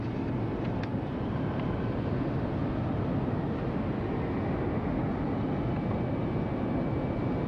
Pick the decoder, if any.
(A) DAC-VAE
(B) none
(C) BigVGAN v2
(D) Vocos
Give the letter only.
B